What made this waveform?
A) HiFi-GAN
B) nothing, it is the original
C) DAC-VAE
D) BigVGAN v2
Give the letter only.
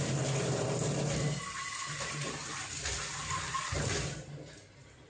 B